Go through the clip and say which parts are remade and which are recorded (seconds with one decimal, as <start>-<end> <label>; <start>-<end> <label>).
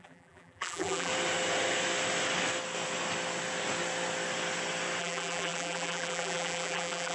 0.0-1.1 remade; 1.1-5.0 recorded; 5.0-7.1 remade